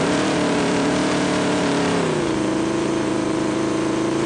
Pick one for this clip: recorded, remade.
remade